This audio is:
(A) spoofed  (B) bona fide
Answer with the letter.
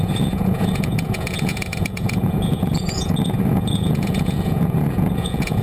A